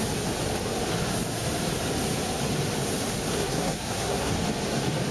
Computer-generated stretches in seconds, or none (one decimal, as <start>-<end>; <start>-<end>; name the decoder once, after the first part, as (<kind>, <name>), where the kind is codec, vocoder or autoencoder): 3.3-4.3 (codec, SNAC)